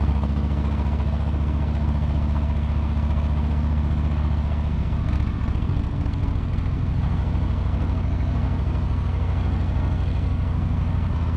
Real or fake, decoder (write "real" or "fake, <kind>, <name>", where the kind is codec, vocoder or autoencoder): fake, codec, SNAC